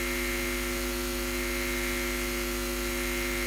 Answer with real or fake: real